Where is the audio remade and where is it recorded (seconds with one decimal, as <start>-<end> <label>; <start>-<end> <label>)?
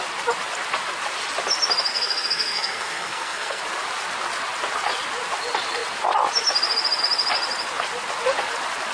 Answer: 0.0-1.9 recorded; 1.9-3.6 remade; 3.6-8.9 recorded